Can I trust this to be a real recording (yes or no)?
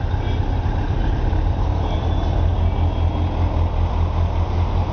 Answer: yes